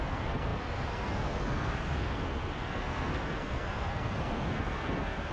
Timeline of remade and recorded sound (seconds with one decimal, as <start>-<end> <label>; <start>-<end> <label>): 0.0-5.3 remade